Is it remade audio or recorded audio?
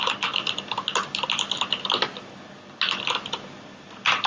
recorded